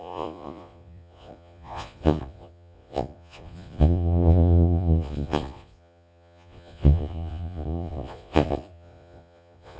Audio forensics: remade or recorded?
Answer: remade